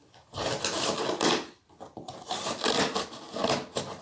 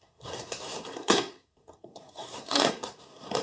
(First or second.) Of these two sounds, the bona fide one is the first